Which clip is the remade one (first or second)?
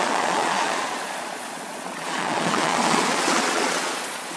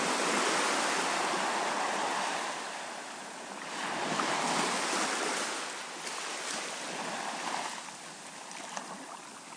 first